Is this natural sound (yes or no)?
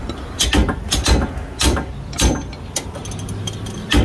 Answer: yes